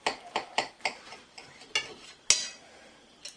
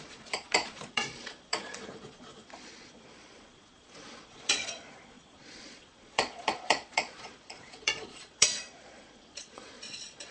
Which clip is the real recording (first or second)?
first